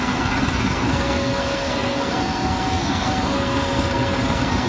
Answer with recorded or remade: remade